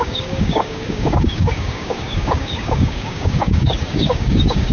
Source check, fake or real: fake